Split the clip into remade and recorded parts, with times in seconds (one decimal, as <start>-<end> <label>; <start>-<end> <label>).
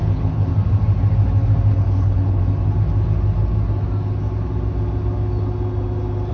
0.0-0.5 remade; 0.5-1.7 recorded; 1.7-2.4 remade; 2.4-6.3 recorded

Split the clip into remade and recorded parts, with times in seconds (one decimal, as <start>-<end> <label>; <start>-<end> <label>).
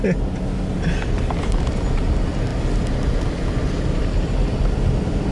0.0-5.3 recorded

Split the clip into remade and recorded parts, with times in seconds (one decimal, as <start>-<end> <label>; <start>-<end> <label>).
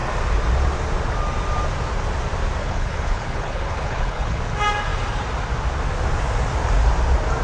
0.0-2.6 recorded; 2.6-4.4 remade; 4.4-7.4 recorded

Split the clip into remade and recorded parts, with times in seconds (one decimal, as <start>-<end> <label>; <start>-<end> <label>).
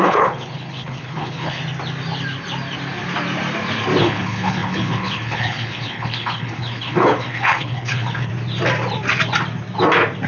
0.0-1.6 remade; 1.6-4.0 recorded; 4.0-8.3 remade; 8.3-10.3 recorded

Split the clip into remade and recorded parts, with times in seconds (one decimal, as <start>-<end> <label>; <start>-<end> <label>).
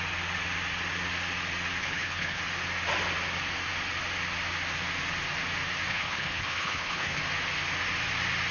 0.0-1.8 recorded; 1.8-2.4 remade; 2.4-5.9 recorded; 5.9-7.2 remade; 7.2-8.5 recorded